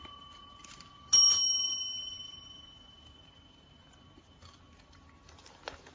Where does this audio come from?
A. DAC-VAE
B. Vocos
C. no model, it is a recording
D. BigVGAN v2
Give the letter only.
D